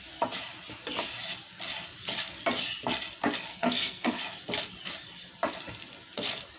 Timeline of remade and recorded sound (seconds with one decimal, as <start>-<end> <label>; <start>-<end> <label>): 0.0-3.5 recorded; 3.5-4.2 remade; 4.2-6.6 recorded